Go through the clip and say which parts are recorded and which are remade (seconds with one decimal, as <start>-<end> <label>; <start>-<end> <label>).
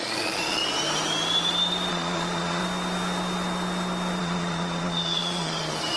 0.0-0.6 remade; 0.6-1.9 recorded; 1.9-2.6 remade; 2.6-4.2 recorded; 4.2-6.0 remade